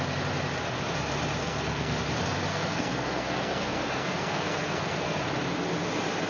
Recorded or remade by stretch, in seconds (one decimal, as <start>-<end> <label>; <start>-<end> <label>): 0.0-1.4 recorded; 1.4-2.0 remade; 2.0-2.5 recorded; 2.5-5.2 remade; 5.2-6.3 recorded